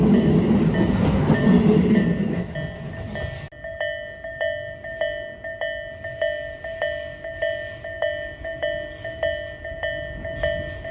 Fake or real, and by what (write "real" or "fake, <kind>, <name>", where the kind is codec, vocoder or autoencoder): real